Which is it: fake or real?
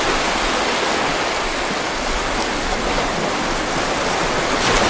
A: real